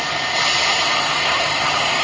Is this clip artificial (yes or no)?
no